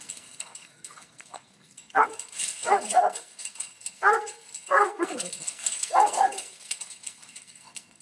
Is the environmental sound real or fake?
fake